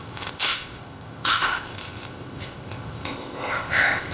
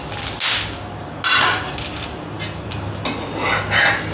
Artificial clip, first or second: first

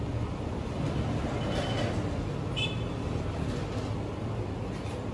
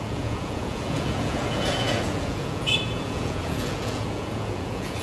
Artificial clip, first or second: second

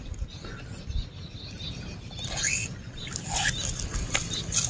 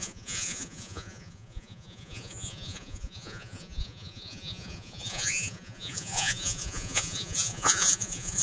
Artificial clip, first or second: second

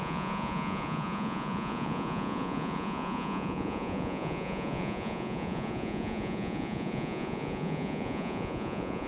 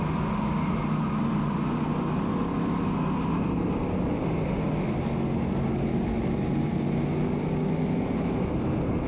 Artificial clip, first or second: first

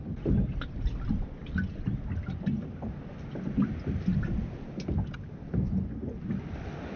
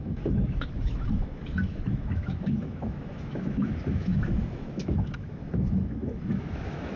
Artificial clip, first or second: second